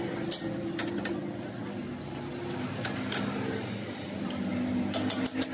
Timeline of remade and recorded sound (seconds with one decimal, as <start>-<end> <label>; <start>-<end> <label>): 0.0-5.5 recorded

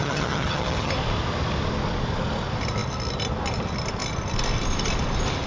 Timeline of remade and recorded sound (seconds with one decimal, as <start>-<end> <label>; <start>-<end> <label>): 0.0-0.9 remade; 0.9-5.5 recorded

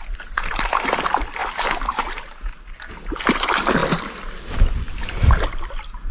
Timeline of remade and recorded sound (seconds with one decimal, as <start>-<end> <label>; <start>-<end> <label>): 0.0-6.1 recorded

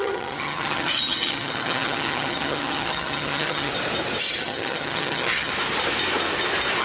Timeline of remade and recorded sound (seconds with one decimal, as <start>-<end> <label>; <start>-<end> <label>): 0.0-3.7 remade; 3.7-4.3 recorded; 4.3-5.5 remade; 5.5-6.8 recorded

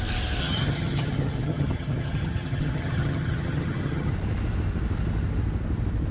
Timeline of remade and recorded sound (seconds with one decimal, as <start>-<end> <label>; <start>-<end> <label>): 0.0-0.4 recorded; 0.4-4.1 remade; 4.1-6.1 recorded

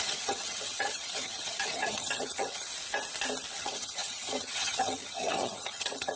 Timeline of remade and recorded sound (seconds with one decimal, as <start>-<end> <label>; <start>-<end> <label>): 0.0-2.7 remade; 2.7-3.6 recorded; 3.6-6.2 remade

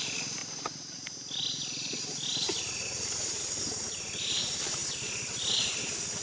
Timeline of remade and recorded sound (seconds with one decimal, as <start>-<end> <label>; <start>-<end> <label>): 0.0-6.2 recorded

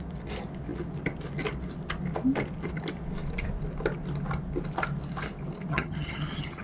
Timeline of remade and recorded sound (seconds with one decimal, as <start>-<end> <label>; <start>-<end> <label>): 0.0-5.7 recorded; 5.7-6.6 remade